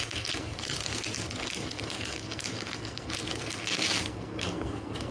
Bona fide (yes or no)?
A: no